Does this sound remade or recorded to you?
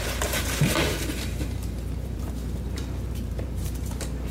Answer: remade